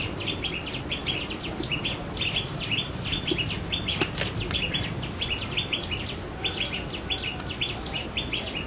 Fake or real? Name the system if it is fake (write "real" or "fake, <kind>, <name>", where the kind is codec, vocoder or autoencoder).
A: real